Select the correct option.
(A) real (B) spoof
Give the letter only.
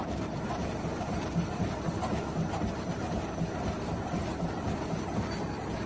B